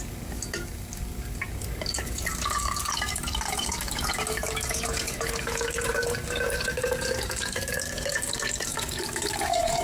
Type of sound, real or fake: fake